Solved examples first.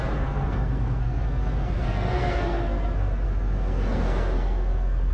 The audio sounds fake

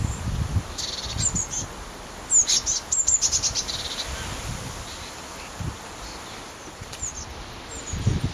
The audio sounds real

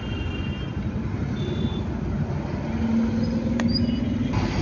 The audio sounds real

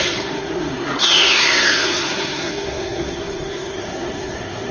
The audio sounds fake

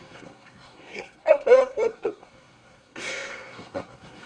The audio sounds fake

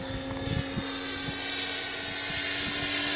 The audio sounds real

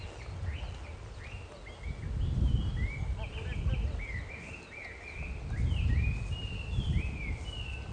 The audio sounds real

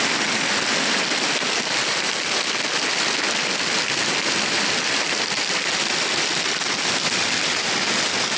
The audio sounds real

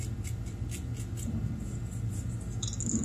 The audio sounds real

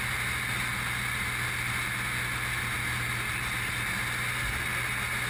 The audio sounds real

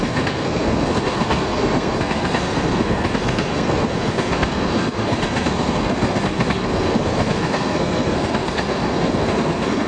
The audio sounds fake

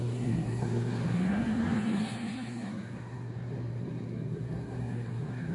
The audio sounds fake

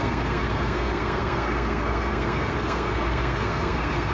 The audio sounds fake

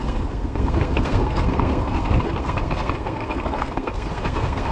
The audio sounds fake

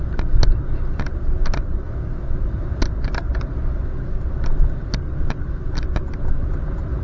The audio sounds real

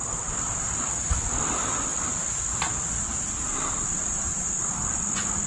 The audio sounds real